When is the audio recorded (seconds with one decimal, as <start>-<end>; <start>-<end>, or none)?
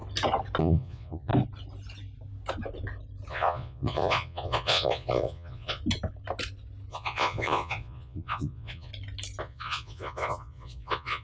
0.0-0.6; 1.3-3.3; 5.8-6.9; 8.9-9.4